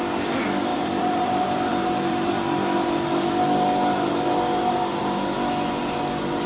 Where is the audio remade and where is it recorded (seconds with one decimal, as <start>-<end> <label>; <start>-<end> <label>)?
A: 0.0-0.7 recorded; 0.7-2.3 remade; 2.3-6.5 recorded